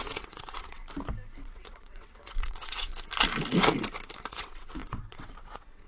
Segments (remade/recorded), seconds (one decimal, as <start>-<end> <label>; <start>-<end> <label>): 0.0-0.8 remade; 0.8-1.4 recorded; 1.4-2.9 remade; 2.9-4.3 recorded; 4.3-5.9 remade